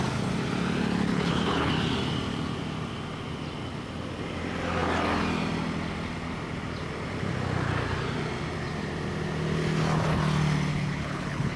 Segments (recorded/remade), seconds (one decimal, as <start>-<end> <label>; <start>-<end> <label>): 0.0-1.1 recorded; 1.1-1.7 remade; 1.7-10.7 recorded; 10.7-11.6 remade